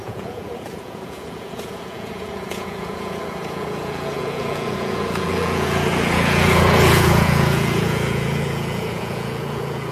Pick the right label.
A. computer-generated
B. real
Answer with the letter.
A